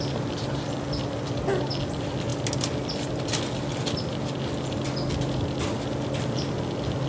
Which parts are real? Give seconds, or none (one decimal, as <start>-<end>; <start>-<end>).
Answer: 0.0-7.1